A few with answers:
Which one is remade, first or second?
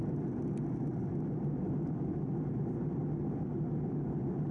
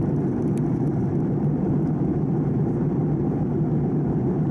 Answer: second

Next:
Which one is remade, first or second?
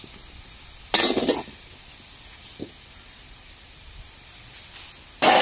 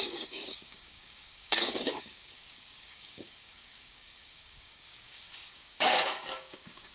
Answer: second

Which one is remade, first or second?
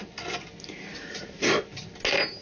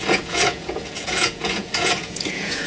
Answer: second